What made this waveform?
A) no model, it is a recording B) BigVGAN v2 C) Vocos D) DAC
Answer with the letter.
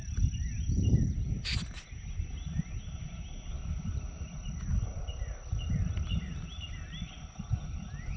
A